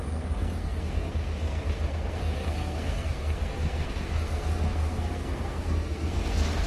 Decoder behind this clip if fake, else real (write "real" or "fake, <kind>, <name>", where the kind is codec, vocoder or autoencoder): fake, codec, SNAC